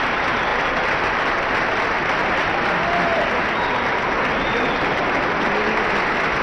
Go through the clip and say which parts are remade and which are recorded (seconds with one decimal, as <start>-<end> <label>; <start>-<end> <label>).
0.0-6.4 recorded